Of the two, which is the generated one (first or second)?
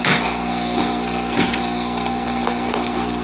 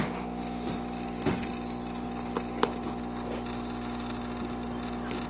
first